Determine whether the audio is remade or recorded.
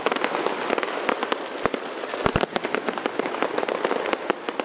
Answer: recorded